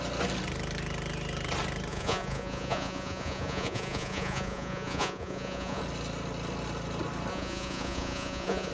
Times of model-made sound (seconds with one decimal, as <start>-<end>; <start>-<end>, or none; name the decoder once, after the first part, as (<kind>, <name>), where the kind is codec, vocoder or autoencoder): 1.9-5.8 (vocoder, Vocos); 7.3-8.7